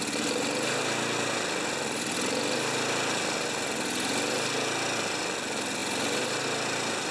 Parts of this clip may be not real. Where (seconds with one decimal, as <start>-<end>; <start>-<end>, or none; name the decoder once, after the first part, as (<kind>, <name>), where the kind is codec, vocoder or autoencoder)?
none